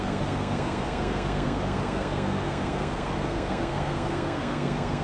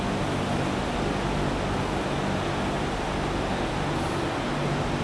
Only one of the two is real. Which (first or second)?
second